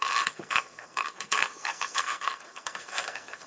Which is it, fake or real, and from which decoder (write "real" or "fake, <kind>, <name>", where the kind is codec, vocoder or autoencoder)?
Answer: fake, codec, SNAC